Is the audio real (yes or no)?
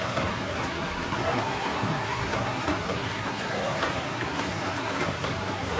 no